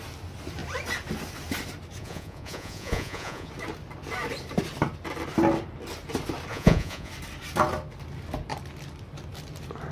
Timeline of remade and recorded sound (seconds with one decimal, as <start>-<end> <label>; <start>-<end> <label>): 0.0-2.0 recorded; 2.0-3.5 remade; 3.5-6.5 recorded; 6.5-7.1 remade; 7.1-9.9 recorded